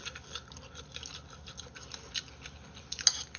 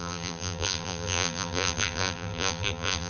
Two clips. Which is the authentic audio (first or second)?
first